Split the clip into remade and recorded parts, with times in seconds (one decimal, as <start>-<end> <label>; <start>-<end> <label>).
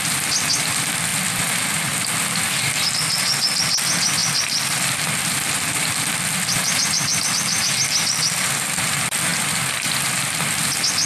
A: 0.0-4.2 recorded; 4.2-7.3 remade; 7.3-11.1 recorded